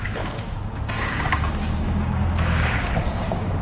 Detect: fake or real fake